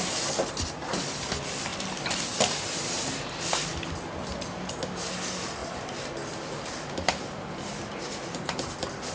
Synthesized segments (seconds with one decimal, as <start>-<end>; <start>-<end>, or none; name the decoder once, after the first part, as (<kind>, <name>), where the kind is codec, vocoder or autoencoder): 1.7-3.9 (vocoder, BigVGAN v2); 5.6-7.4